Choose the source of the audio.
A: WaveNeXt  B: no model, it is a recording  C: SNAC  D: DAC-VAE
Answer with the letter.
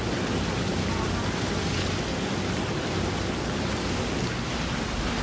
B